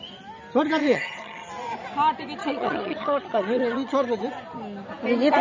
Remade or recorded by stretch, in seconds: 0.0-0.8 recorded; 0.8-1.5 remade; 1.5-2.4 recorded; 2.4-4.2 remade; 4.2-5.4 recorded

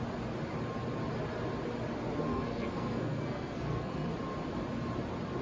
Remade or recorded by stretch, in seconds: 0.0-2.3 recorded; 2.3-4.1 remade; 4.1-5.4 recorded

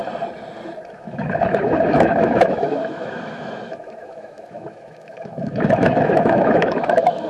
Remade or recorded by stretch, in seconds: 0.0-0.9 recorded; 0.9-7.3 remade

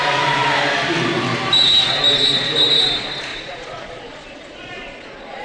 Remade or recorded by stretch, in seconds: 0.0-3.3 recorded; 3.3-5.4 remade

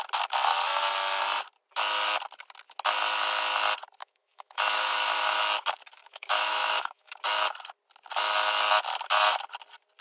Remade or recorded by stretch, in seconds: 0.0-4.0 recorded; 4.0-5.4 remade; 5.4-6.0 recorded; 6.0-7.2 remade; 7.2-10.0 recorded

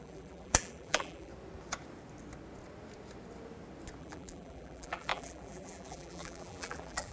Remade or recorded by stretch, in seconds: 0.0-1.3 remade; 1.3-4.0 recorded; 4.0-7.1 remade

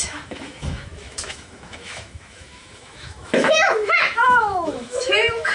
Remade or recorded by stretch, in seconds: 0.0-5.5 remade

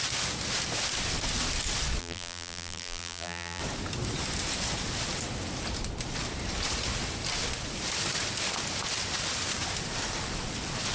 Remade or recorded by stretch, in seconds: 0.0-2.0 recorded; 2.0-3.6 remade; 3.6-10.9 recorded